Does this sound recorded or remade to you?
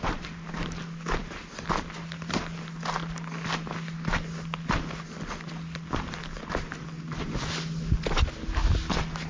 recorded